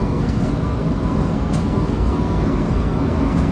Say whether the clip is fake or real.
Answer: fake